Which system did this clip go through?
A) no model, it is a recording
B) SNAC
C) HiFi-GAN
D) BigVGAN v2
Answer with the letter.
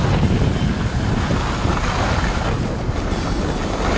A